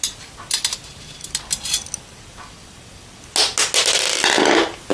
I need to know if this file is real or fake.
real